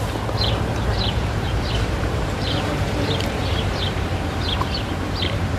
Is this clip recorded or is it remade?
remade